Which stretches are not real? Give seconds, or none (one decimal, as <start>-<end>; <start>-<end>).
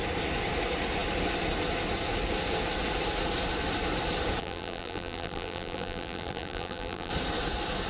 4.4-7.1